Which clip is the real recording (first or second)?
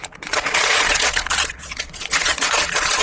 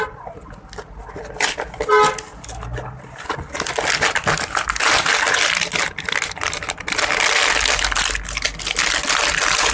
second